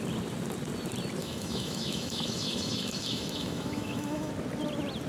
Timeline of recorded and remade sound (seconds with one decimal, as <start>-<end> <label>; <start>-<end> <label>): 0.0-1.2 recorded; 1.2-4.3 remade; 4.3-5.1 recorded